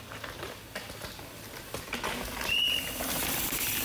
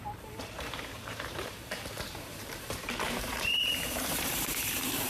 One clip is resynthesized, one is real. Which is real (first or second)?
first